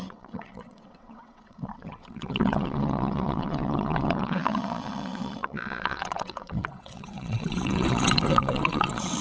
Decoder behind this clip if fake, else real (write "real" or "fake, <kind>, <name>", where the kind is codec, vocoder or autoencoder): fake, vocoder, WaveNeXt